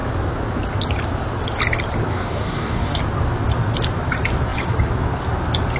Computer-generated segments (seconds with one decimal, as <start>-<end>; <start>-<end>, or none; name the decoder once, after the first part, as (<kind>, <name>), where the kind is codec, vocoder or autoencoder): 2.1-3.0 (codec, DAC)